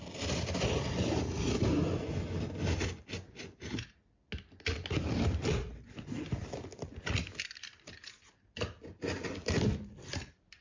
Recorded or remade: recorded